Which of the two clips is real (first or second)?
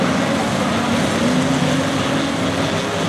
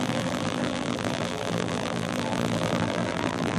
first